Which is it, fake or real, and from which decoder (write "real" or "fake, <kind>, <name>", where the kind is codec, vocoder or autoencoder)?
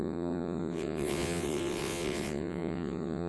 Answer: fake, vocoder, WaveNeXt